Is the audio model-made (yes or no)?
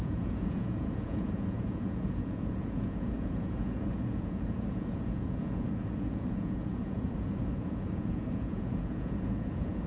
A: yes